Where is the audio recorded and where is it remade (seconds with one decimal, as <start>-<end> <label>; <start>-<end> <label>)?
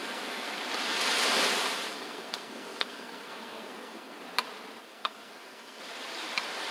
0.0-0.6 remade; 0.6-1.9 recorded; 1.9-4.2 remade; 4.2-4.8 recorded; 4.8-5.8 remade; 5.8-6.7 recorded